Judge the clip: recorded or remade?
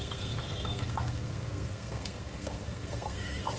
remade